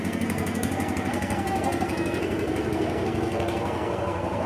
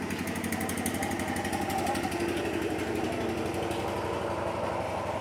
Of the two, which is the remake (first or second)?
first